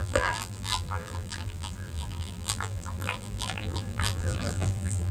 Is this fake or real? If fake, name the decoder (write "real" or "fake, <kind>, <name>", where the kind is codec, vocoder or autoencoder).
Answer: fake, vocoder, BigVGAN v2